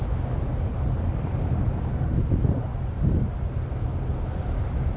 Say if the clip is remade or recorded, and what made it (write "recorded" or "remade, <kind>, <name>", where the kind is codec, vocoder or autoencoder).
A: recorded